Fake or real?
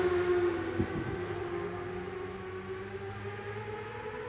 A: real